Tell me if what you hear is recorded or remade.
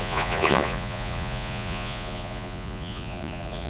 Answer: remade